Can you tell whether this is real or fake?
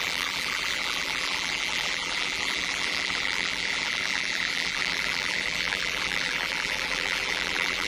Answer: fake